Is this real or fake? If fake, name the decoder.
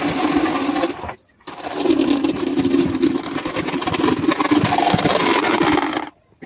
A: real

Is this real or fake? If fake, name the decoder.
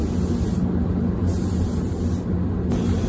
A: real